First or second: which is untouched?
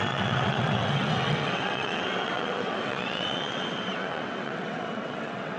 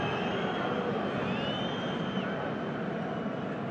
second